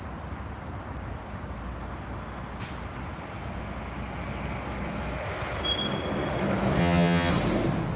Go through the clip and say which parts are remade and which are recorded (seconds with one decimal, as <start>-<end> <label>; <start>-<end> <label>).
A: 0.0-6.8 recorded; 6.8-7.3 remade; 7.3-8.0 recorded